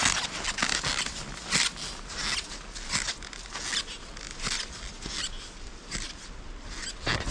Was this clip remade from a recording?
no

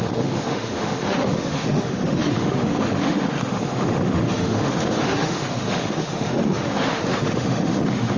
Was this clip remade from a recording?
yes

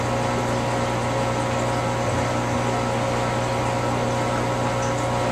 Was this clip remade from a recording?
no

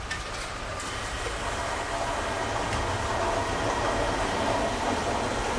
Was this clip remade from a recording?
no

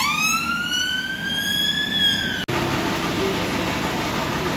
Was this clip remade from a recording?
no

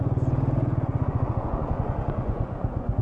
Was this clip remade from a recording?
yes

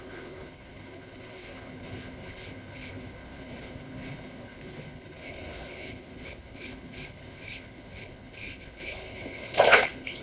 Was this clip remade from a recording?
yes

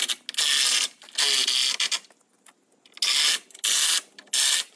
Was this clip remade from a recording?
no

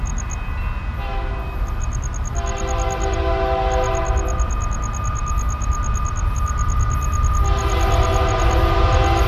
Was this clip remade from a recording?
no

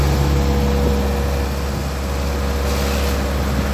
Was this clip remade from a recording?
no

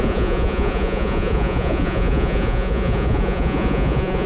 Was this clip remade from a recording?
yes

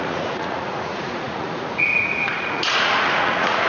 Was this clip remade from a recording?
yes